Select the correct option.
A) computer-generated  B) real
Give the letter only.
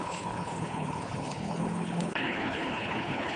A